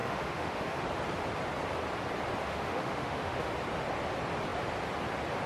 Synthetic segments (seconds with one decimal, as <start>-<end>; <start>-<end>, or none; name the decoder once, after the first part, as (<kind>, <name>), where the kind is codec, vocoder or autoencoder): 0.0-0.8 (autoencoder, DAC-VAE); 2.4-3.5